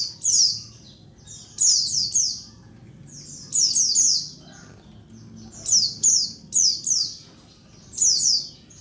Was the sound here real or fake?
real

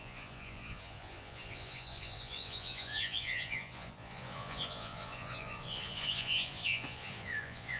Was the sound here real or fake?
fake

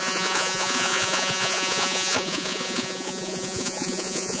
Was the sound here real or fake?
fake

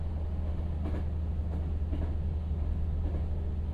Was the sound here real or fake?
real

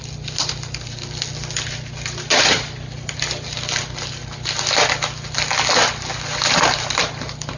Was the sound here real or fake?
real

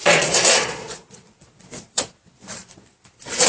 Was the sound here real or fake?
fake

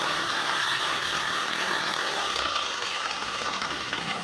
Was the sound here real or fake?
fake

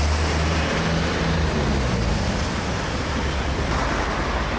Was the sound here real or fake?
real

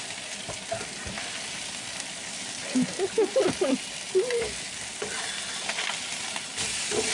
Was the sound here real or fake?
fake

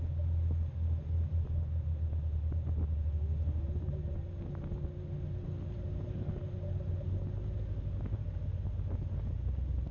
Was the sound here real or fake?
real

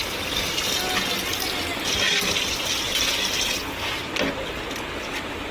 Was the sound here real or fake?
real